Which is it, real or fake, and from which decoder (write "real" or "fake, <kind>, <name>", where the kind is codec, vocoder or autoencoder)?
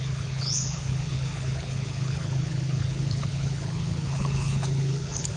fake, codec, HILCodec